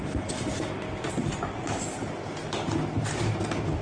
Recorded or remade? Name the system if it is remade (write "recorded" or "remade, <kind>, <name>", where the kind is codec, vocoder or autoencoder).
recorded